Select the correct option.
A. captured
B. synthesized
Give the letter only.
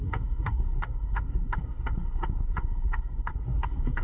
B